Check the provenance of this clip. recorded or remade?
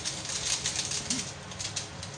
recorded